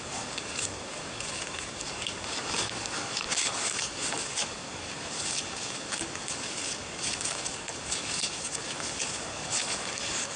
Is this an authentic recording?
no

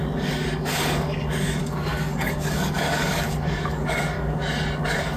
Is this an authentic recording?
no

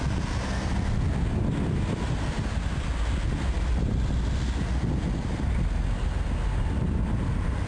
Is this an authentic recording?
yes